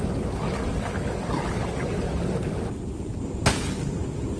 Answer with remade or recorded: recorded